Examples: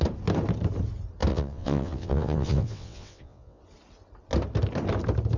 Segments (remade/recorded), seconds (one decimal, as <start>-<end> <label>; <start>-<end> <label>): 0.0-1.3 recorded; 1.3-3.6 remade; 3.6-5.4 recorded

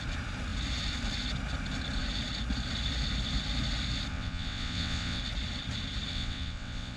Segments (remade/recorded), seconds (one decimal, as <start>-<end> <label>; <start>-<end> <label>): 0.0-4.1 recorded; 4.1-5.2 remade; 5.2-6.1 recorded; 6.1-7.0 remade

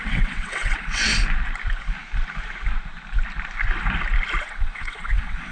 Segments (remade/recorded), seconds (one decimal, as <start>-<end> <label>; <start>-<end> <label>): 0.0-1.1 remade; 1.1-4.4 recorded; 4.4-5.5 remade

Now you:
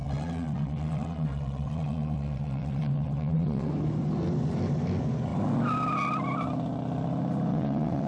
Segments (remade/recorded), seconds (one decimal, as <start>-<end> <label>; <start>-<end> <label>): 0.0-3.7 remade; 3.7-7.5 recorded; 7.5-8.1 remade

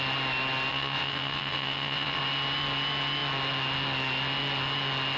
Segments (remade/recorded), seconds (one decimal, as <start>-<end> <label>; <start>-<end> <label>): 0.0-0.7 recorded; 0.7-2.2 remade; 2.2-5.2 recorded

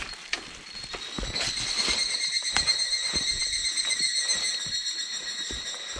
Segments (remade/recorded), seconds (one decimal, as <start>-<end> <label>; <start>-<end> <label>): 0.0-6.0 recorded